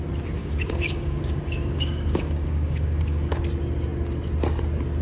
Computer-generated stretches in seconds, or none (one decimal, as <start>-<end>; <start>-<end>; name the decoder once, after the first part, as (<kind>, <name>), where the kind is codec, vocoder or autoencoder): 0.4-3.4 (codec, DAC)